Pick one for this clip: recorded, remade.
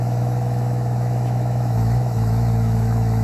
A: remade